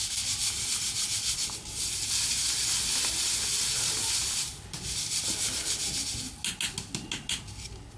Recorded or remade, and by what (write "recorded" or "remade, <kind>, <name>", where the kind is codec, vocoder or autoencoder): recorded